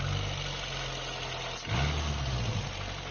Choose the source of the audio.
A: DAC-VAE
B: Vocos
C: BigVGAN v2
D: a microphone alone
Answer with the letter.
D